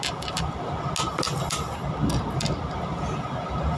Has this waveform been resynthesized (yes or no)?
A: no